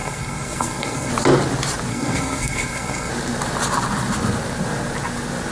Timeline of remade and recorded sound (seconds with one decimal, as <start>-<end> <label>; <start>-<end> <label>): 0.0-1.1 remade; 1.1-1.9 recorded; 1.9-3.1 remade; 3.1-5.5 recorded